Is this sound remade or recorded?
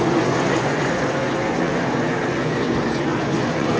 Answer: remade